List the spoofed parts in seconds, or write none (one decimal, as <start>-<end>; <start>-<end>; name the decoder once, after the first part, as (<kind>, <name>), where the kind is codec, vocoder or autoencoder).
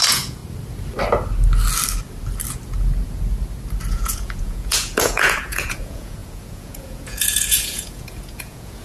0.0-0.4 (vocoder, Vocos); 3.9-8.8